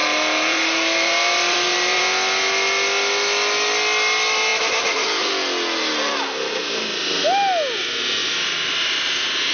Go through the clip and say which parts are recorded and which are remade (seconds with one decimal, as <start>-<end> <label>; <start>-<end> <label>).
0.0-2.0 remade; 2.0-8.2 recorded; 8.2-9.1 remade; 9.1-9.5 recorded